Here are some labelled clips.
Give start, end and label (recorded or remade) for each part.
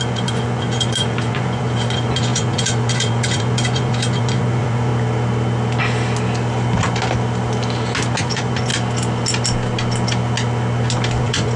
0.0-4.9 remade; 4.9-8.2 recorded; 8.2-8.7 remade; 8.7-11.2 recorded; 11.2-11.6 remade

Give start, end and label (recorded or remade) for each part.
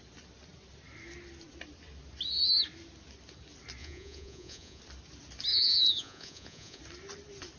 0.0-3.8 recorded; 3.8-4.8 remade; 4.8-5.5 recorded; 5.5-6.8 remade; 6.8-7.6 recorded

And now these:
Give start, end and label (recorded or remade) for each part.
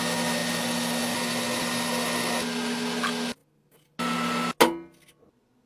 0.0-5.7 recorded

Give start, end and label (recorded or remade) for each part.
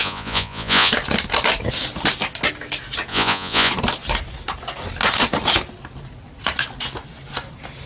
0.0-0.9 remade; 0.9-3.1 recorded; 3.1-3.7 remade; 3.7-7.9 recorded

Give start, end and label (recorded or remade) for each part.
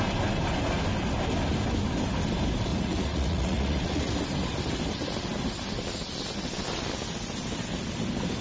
0.0-2.7 recorded; 2.7-4.1 remade; 4.1-8.4 recorded